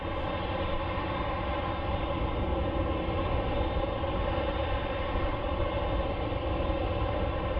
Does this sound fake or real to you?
real